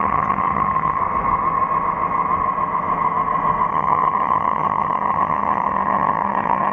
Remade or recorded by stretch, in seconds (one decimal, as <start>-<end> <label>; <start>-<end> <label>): 0.0-1.0 remade; 1.0-3.7 recorded; 3.7-6.7 remade